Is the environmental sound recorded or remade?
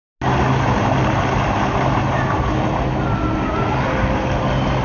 recorded